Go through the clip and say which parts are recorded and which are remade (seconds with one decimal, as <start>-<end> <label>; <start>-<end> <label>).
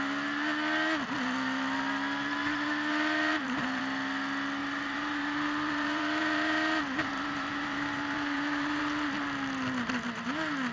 0.0-2.9 recorded; 2.9-3.8 remade; 3.8-4.6 recorded; 4.6-8.8 remade; 8.8-10.7 recorded